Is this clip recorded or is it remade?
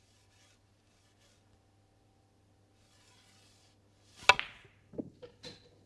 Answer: recorded